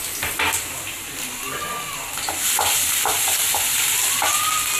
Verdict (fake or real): real